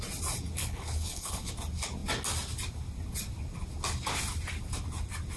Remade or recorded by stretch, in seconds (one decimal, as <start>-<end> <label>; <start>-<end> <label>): 0.0-0.6 recorded; 0.6-1.5 remade; 1.5-5.4 recorded